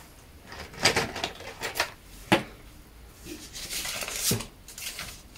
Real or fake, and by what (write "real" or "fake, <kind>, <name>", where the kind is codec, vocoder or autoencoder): real